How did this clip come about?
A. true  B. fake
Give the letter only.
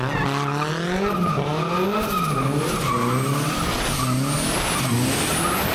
A